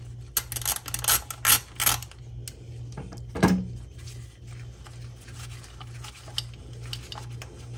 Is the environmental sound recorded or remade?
recorded